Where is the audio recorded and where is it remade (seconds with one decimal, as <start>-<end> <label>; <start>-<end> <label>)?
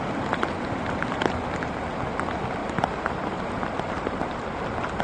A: 0.0-2.6 recorded; 2.6-4.3 remade; 4.3-5.0 recorded